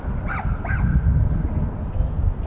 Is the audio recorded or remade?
recorded